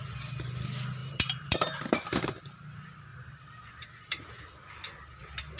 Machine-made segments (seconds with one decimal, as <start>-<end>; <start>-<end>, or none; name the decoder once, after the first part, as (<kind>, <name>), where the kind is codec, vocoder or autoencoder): 1.0-2.5 (vocoder, BigVGAN v2); 3.1-4.2